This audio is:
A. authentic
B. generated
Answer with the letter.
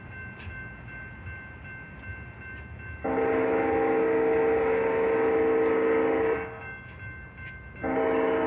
A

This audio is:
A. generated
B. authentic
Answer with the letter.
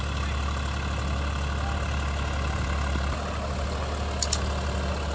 B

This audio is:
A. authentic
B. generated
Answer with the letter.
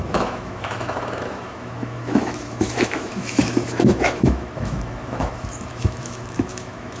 B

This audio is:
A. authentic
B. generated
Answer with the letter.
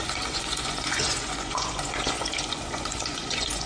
B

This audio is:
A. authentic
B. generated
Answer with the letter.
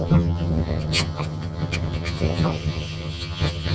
B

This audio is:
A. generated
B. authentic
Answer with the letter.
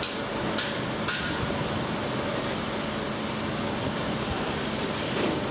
B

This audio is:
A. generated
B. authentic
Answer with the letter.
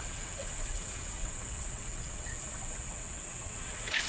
A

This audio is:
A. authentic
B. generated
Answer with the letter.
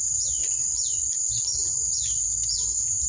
A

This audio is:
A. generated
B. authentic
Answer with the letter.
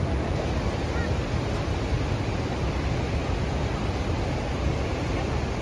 B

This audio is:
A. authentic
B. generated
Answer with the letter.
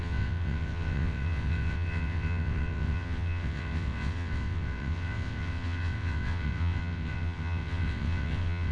B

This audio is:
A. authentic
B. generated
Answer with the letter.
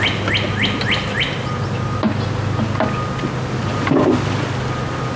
A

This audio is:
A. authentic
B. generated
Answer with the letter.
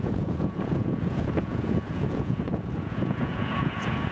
B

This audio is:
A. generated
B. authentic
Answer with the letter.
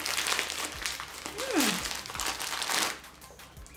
B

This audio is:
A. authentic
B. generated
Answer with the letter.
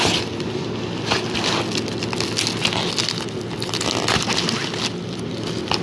A